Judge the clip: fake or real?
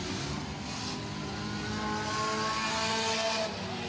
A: real